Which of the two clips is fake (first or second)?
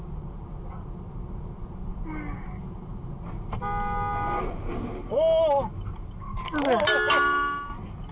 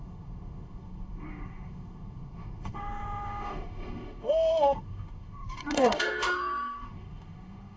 second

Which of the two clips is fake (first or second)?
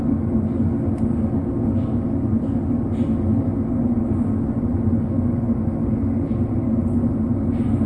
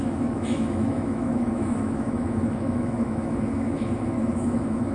second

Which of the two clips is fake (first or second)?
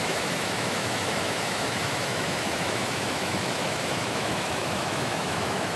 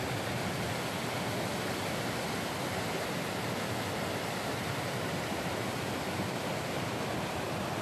first